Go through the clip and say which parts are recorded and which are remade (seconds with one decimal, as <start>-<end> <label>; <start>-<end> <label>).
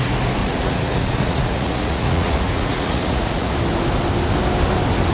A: 0.0-0.4 recorded; 0.4-3.5 remade; 3.5-5.1 recorded